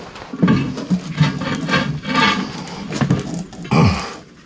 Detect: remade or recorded recorded